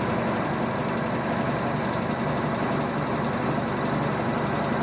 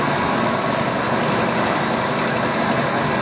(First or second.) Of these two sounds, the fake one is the second